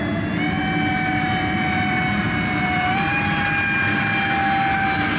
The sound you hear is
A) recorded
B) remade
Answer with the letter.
A